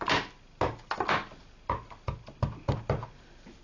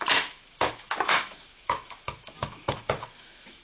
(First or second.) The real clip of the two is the first